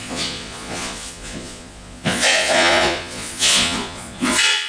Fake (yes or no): yes